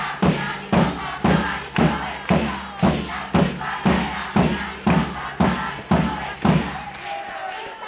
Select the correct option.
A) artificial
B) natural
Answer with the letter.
B